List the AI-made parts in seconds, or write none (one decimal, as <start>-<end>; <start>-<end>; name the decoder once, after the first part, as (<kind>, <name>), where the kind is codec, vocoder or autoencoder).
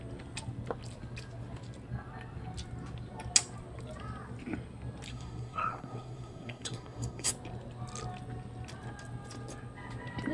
5.1-7.3 (codec, SNAC)